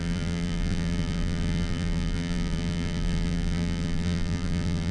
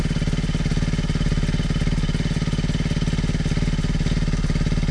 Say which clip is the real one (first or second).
second